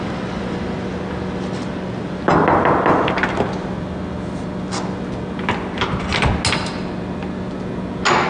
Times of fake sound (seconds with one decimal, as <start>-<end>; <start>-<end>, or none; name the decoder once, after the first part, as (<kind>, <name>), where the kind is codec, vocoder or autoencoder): none